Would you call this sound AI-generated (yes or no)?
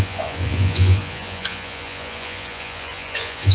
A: yes